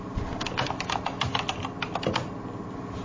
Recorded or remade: recorded